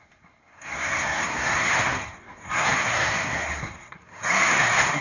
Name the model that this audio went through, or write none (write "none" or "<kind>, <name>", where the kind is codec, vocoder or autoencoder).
codec, SNAC